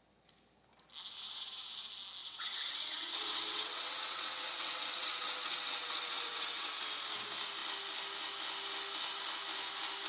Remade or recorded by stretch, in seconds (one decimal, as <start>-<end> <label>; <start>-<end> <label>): 0.0-2.2 recorded; 2.2-6.8 remade; 6.8-10.1 recorded